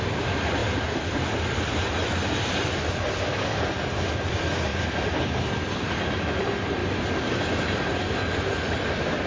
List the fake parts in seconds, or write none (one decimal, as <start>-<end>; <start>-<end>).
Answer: 0.0-0.6; 2.8-4.7; 5.5-6.8; 8.5-9.3